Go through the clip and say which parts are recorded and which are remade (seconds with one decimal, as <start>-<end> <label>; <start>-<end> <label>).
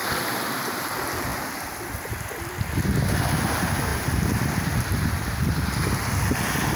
0.0-0.8 remade; 0.8-1.3 recorded; 1.3-2.1 remade; 2.1-3.9 recorded; 3.9-4.7 remade; 4.7-6.8 recorded